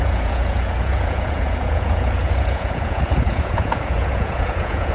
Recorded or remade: remade